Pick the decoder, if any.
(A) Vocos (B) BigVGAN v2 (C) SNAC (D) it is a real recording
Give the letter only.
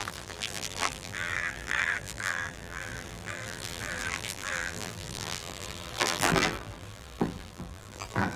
B